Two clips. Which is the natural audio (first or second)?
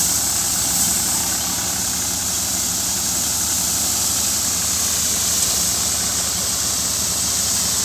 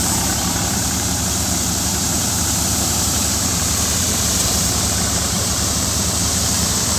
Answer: first